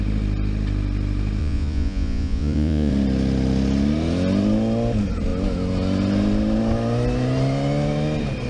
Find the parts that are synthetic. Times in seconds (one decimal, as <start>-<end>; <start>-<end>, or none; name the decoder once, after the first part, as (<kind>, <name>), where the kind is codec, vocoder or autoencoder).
1.4-2.9 (vocoder, Vocos)